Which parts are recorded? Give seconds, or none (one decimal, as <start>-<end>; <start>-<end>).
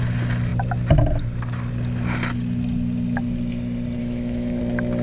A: 0.0-4.0; 4.6-5.0